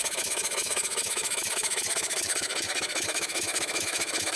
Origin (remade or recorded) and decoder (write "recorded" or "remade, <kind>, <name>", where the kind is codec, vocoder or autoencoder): remade, autoencoder, DAC-VAE